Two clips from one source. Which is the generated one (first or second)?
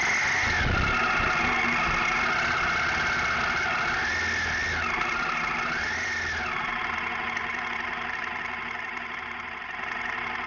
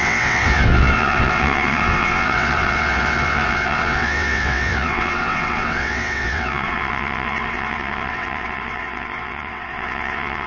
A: second